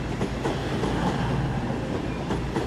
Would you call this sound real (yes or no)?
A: yes